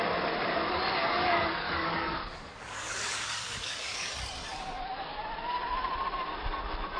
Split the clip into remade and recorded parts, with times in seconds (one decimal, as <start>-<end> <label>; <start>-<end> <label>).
0.0-1.0 recorded; 1.0-4.1 remade; 4.1-4.5 recorded; 4.5-5.2 remade; 5.2-7.0 recorded

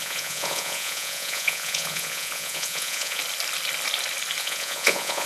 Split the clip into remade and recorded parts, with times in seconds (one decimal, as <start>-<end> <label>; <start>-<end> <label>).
0.0-3.2 remade; 3.2-4.4 recorded; 4.4-5.3 remade

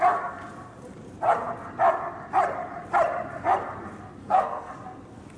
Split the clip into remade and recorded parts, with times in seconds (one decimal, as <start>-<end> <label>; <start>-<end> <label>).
0.0-4.2 recorded; 4.2-4.7 remade; 4.7-5.4 recorded

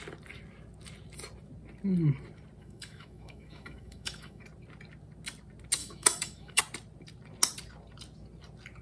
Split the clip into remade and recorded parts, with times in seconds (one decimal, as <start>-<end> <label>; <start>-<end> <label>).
0.0-2.6 recorded; 2.6-4.4 remade; 4.4-5.8 recorded; 5.8-6.6 remade; 6.6-8.8 recorded

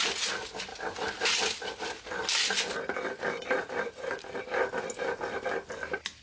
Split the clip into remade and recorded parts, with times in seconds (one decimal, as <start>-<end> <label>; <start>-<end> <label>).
0.0-6.2 recorded

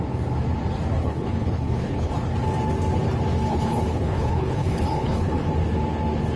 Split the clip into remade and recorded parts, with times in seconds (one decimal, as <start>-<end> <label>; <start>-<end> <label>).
0.0-1.0 recorded; 1.0-2.1 remade; 2.1-3.5 recorded; 3.5-5.5 remade; 5.5-6.4 recorded

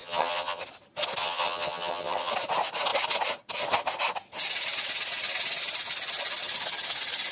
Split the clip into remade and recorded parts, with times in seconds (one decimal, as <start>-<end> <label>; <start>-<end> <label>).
0.0-0.6 remade; 0.6-1.2 recorded; 1.2-2.3 remade; 2.3-7.3 recorded